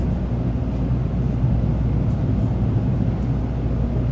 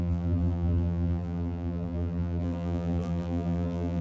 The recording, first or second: first